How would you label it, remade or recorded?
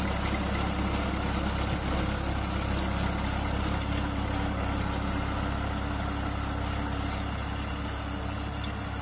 recorded